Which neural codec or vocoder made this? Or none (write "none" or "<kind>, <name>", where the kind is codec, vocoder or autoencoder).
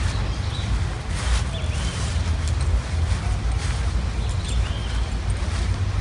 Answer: none